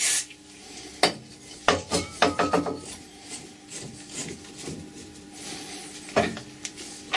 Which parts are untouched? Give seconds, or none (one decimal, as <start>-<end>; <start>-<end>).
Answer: 0.0-4.2; 6.8-7.2